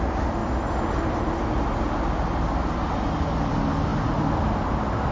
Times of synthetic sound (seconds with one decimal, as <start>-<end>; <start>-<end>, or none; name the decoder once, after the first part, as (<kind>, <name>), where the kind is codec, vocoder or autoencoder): none

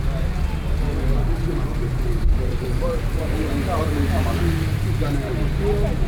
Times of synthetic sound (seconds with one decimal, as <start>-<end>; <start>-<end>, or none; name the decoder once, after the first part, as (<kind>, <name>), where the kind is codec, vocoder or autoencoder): 1.7-3.2 (vocoder, BigVGAN v2)

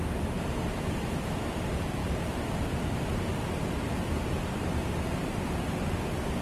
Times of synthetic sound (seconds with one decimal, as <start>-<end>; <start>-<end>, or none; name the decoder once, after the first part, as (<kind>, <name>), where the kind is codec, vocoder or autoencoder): 2.0-5.6 (vocoder, BigVGAN v2)

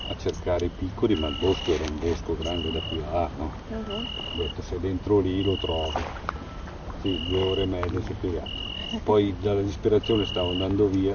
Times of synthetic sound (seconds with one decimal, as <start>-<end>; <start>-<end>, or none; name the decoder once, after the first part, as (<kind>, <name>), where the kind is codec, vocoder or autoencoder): none

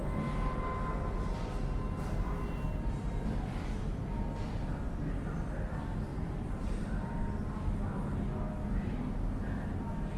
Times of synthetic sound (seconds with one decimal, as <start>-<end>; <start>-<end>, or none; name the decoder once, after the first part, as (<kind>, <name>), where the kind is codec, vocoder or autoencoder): 6.1-7.6 (vocoder, BigVGAN v2)

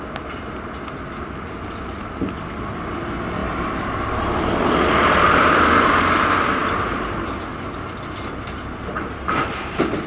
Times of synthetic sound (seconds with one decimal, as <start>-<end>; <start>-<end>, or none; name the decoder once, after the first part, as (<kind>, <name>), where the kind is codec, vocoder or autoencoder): 3.4-4.5 (vocoder, BigVGAN v2); 6.6-7.5

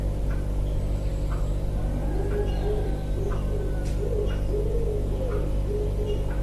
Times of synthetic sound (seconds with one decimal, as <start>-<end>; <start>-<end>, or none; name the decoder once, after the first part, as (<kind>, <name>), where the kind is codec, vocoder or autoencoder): none